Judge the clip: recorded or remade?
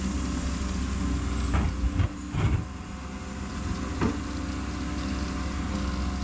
recorded